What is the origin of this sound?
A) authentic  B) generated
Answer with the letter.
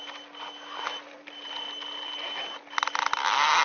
A